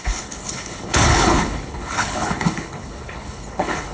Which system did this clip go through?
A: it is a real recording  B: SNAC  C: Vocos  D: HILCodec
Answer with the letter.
D